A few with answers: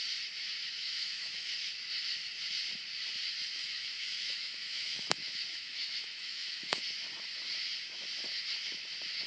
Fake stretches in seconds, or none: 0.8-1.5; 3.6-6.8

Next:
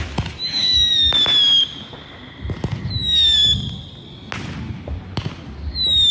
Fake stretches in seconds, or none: none

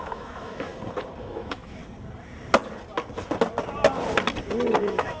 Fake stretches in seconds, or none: 0.0-0.7; 1.2-1.8; 4.8-5.2

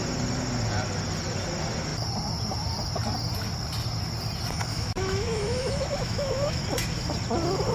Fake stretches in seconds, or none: 4.7-6.6